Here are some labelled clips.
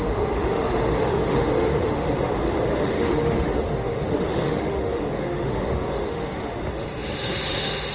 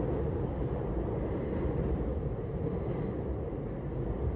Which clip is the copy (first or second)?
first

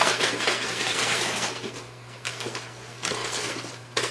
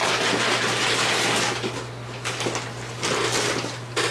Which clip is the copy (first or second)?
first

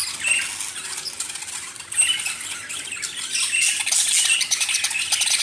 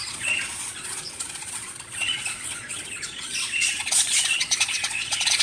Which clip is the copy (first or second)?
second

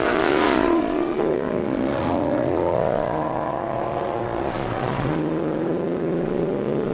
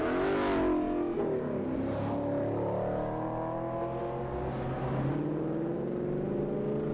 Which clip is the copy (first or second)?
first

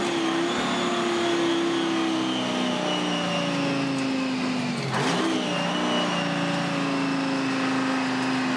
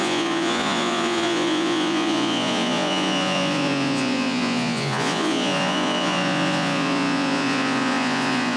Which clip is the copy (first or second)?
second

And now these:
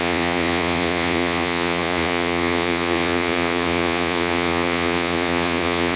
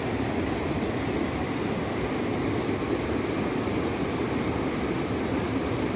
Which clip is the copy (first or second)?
first